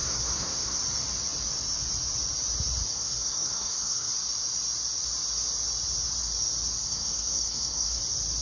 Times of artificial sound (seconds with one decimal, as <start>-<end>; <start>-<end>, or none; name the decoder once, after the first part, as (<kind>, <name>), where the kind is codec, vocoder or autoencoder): 0.0-0.8 (codec, SNAC); 2.9-4.1; 6.8-8.0